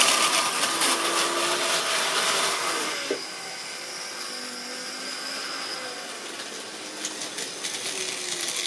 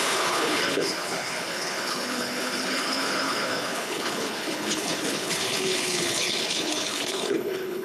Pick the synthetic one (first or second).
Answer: second